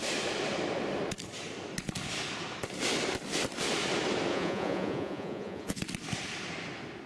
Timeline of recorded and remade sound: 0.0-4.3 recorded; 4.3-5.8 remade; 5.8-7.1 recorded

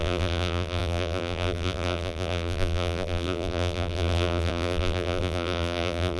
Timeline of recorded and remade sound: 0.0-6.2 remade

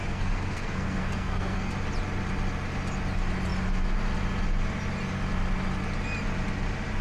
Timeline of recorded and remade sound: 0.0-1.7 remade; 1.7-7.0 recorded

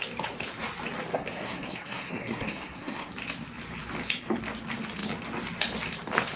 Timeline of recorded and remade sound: 0.0-1.1 recorded; 1.1-3.1 remade; 3.1-6.4 recorded

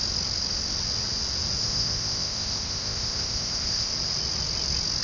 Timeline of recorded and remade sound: 0.0-1.6 recorded; 1.6-3.9 remade; 3.9-5.0 recorded